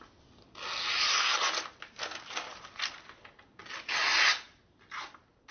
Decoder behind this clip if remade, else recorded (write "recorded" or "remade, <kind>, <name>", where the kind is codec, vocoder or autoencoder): recorded